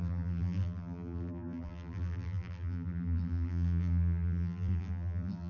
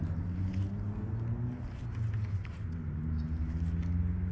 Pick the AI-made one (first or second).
first